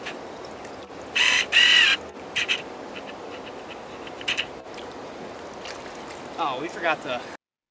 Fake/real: real